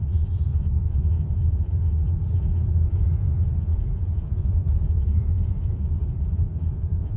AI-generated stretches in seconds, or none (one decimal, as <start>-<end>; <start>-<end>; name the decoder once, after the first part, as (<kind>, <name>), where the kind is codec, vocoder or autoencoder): 0.0-7.2 (vocoder, Vocos)